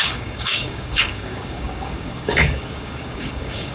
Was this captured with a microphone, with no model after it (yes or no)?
no